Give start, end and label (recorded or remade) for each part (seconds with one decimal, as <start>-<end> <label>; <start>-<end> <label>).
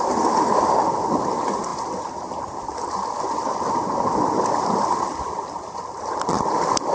0.0-6.9 recorded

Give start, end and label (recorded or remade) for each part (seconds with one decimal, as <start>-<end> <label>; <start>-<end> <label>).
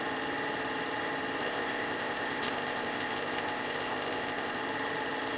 0.0-1.4 recorded; 1.4-4.6 remade; 4.6-5.4 recorded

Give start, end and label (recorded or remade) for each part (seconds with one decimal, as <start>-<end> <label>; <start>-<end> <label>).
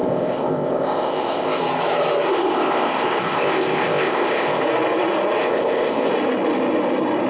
0.0-1.6 remade; 1.6-2.3 recorded; 2.3-4.6 remade; 4.6-5.4 recorded; 5.4-6.1 remade; 6.1-7.3 recorded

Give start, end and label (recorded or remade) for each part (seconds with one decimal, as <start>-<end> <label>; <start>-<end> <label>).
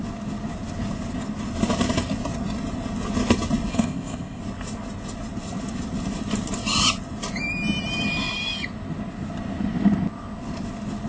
0.0-3.7 recorded; 3.7-4.4 remade; 4.4-11.1 recorded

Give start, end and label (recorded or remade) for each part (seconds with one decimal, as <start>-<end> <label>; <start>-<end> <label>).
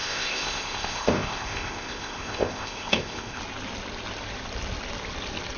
0.0-3.4 remade; 3.4-5.6 recorded